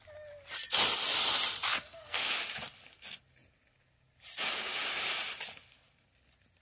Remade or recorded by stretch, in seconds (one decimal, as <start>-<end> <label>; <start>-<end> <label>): 0.0-1.7 recorded; 1.7-2.3 remade; 2.3-6.6 recorded